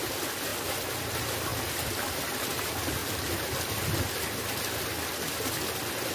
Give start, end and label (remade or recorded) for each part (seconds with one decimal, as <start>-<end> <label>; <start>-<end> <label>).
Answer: 0.0-6.1 recorded